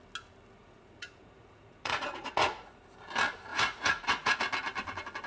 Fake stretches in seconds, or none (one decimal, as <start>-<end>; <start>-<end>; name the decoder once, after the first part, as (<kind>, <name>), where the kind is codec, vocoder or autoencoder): 0.6-2.8 (vocoder, Vocos); 3.5-4.4